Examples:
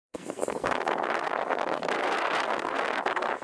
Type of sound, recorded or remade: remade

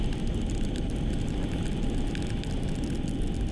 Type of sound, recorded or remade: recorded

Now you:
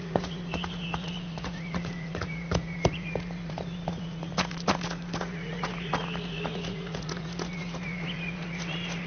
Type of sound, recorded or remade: remade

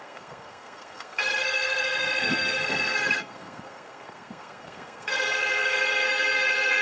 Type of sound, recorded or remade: remade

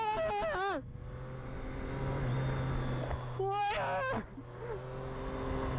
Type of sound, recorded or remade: recorded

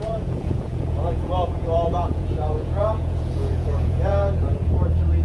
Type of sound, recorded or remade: remade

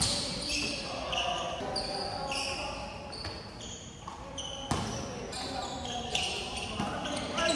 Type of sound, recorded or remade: recorded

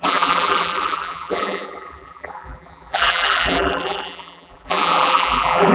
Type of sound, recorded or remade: remade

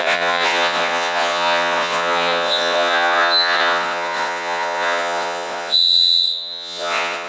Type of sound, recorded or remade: remade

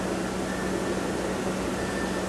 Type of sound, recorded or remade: recorded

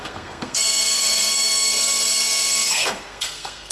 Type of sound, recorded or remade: remade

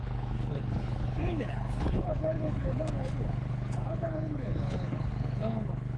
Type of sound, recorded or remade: remade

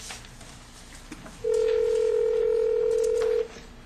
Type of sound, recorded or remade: remade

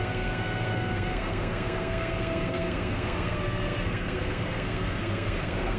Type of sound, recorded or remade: remade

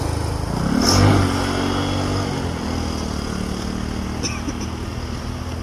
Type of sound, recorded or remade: recorded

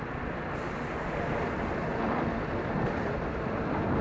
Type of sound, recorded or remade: remade